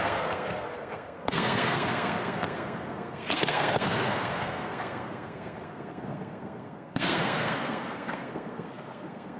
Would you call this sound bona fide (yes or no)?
no